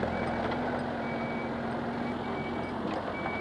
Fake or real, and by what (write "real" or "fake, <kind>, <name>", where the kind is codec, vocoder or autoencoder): real